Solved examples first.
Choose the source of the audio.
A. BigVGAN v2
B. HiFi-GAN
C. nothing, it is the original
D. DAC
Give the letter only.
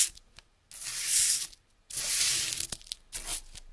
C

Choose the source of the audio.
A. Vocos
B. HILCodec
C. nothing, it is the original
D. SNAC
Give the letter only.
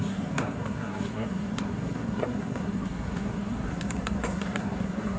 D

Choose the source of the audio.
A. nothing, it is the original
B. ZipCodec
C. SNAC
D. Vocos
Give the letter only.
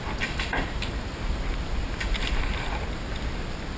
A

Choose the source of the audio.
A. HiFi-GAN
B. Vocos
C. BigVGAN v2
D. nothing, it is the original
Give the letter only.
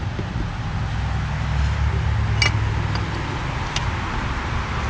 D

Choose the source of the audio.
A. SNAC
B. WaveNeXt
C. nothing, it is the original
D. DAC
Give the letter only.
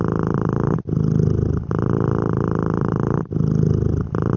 C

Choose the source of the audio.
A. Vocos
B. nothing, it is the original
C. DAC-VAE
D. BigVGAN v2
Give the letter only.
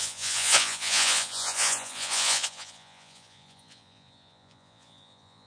A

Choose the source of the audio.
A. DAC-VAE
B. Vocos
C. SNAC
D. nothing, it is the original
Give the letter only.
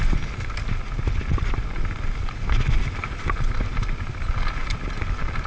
D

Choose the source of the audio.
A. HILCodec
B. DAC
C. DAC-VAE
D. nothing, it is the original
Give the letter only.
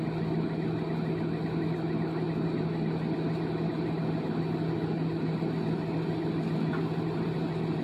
D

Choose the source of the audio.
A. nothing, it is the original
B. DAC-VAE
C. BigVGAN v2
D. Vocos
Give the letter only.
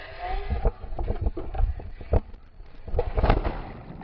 A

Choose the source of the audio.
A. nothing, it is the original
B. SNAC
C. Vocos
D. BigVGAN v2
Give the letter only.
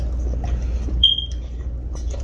A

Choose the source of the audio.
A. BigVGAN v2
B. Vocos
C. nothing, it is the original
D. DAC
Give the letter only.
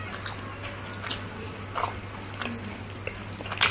C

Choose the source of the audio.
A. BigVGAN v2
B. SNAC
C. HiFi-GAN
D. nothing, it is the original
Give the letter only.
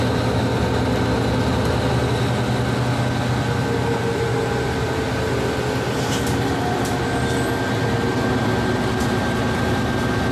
D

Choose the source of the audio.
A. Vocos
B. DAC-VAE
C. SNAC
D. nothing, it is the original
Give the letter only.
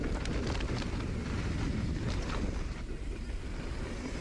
D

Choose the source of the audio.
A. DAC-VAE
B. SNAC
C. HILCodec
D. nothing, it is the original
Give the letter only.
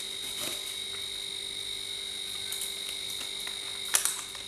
D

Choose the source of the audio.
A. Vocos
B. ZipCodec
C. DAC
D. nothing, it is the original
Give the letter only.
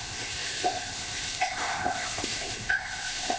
B